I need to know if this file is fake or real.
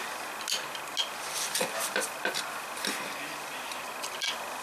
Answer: real